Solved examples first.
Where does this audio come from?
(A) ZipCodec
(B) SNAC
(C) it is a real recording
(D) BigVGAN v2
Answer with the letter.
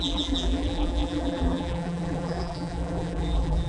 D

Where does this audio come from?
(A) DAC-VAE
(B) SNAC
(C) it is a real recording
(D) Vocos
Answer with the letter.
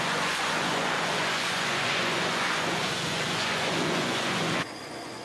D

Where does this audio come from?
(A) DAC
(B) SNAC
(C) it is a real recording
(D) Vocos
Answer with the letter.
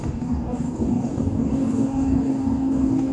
A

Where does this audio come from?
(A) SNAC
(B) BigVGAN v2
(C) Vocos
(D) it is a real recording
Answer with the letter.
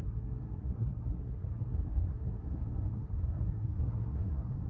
A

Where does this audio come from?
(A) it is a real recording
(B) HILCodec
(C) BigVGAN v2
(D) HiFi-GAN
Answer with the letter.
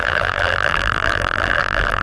C